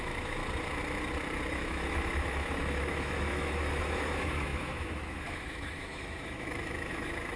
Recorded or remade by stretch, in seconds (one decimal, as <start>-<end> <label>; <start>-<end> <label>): 0.0-0.4 remade; 0.4-1.5 recorded; 1.5-7.4 remade